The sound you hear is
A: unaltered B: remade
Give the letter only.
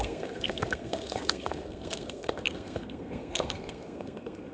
B